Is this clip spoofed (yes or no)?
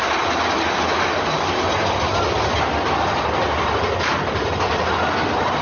no